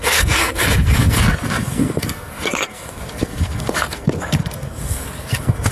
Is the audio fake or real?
fake